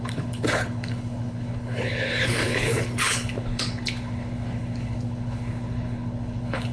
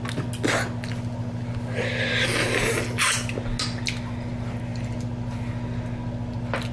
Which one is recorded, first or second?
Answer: second